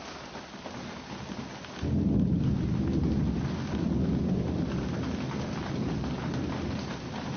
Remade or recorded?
recorded